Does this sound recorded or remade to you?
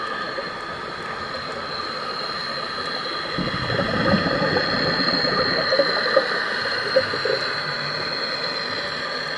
recorded